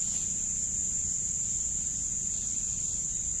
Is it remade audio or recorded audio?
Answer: recorded